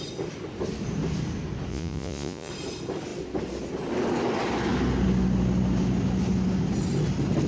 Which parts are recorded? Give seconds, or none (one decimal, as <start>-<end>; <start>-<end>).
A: 0.0-1.7; 2.5-7.5